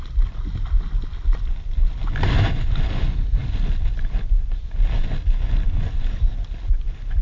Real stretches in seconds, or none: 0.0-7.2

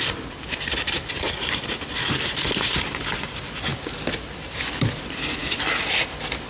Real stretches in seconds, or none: 0.0-3.7; 5.0-5.4; 6.0-6.5

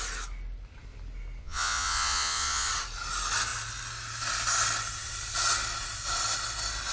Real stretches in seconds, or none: 0.0-1.4; 2.7-6.9

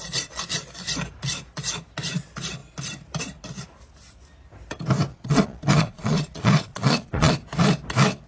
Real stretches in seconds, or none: 0.0-5.1; 7.3-8.3

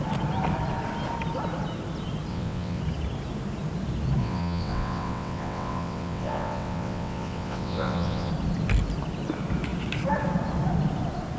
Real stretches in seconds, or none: 0.0-2.3; 2.8-4.2; 8.3-11.4

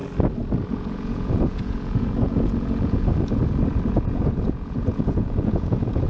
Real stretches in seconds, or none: 0.0-0.7; 3.4-3.9